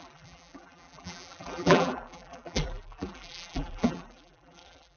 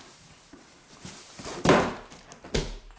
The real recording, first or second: second